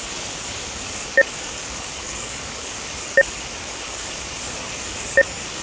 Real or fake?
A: fake